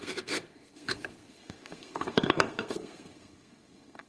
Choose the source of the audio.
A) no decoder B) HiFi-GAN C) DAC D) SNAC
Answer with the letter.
D